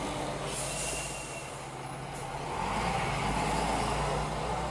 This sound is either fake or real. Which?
real